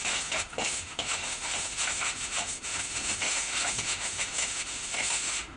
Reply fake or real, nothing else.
fake